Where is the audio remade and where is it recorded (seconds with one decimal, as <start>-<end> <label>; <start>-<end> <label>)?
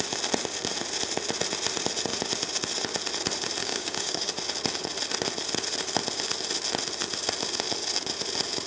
0.0-3.6 recorded; 3.6-4.3 remade; 4.3-8.7 recorded